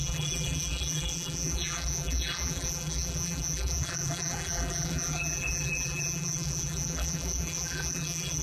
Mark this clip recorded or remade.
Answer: remade